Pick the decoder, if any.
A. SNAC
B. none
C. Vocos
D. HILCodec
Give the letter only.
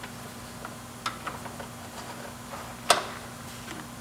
B